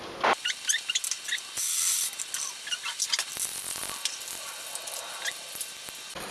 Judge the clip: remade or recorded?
recorded